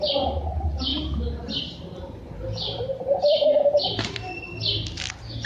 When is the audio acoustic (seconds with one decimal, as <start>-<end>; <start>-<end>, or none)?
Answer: 0.0-5.5